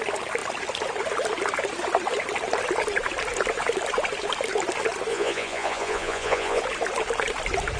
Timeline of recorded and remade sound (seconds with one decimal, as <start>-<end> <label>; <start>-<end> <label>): 0.0-5.1 recorded; 5.1-6.6 remade; 6.6-7.8 recorded